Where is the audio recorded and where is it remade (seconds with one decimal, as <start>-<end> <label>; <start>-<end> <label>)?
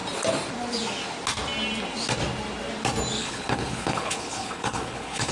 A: 0.0-3.2 recorded; 3.2-5.3 remade